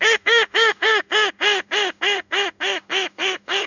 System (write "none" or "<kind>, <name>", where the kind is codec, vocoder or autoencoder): autoencoder, DAC-VAE